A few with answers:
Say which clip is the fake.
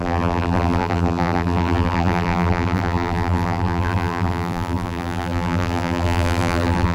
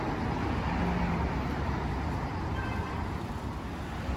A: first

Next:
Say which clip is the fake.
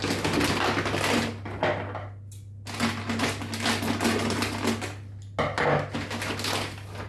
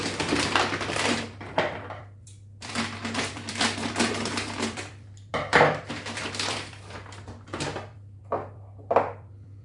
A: second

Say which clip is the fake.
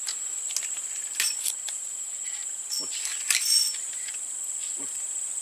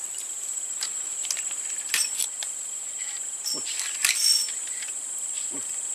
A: second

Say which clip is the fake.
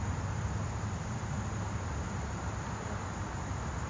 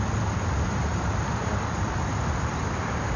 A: second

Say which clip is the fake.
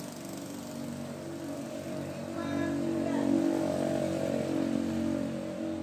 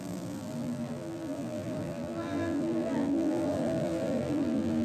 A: second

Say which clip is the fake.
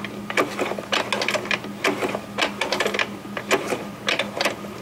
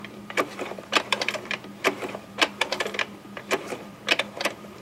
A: second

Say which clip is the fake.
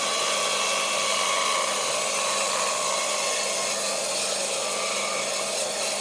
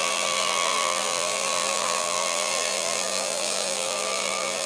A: second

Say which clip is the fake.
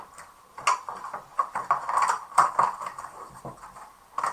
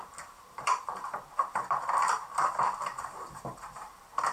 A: second